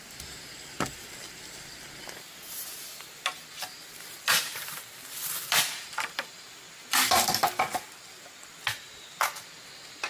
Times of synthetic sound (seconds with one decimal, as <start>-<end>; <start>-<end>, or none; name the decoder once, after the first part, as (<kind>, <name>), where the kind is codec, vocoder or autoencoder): 5.7-7.4 (vocoder, BigVGAN v2)